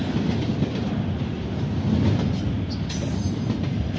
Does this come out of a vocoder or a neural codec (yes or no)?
no